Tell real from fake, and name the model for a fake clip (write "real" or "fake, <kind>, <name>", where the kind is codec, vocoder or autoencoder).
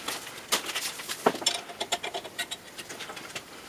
real